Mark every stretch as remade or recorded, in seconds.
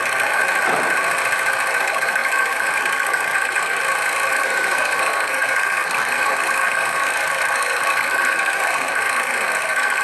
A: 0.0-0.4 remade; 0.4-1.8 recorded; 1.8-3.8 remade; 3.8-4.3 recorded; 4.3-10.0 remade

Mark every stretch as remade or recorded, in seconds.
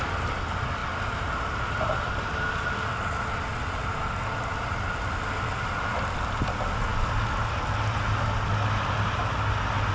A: 0.0-9.9 recorded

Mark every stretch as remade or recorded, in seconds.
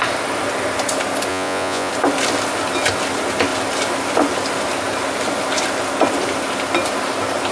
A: 0.0-1.3 recorded; 1.3-1.9 remade; 1.9-7.5 recorded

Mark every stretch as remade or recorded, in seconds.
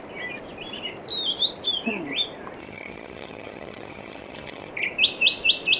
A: 0.0-2.6 recorded; 2.6-4.7 remade; 4.7-5.8 recorded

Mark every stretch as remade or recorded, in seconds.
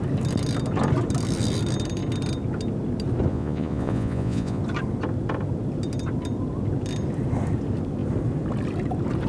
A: 0.0-3.3 recorded; 3.3-4.6 remade; 4.6-9.3 recorded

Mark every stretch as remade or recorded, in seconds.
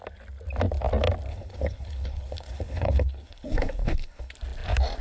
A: 0.0-1.3 recorded; 1.3-4.3 remade; 4.3-5.0 recorded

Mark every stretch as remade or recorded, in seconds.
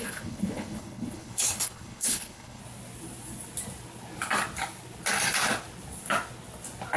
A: 0.0-2.6 remade; 2.6-7.0 recorded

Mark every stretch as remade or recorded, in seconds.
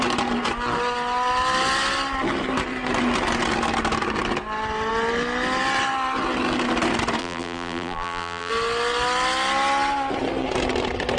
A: 0.0-7.2 recorded; 7.2-8.5 remade; 8.5-11.2 recorded